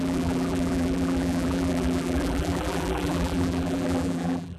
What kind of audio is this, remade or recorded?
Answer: remade